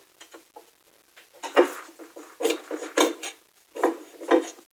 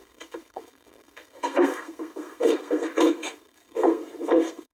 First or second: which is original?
first